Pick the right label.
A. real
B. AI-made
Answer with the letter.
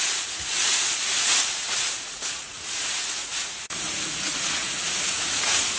B